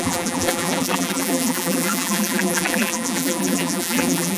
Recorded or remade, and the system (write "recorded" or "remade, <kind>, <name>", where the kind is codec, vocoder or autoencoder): remade, vocoder, BigVGAN v2